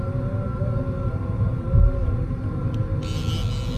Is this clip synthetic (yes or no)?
no